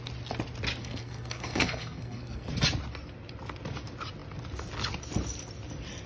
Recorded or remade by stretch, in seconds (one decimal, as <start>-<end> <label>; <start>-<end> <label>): 0.0-0.8 recorded; 0.8-2.5 remade; 2.5-6.1 recorded